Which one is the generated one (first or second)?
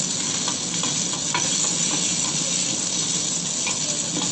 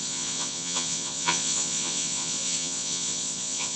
second